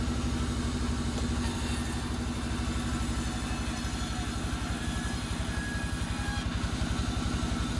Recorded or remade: recorded